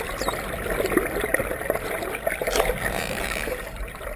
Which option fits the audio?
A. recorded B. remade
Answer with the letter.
B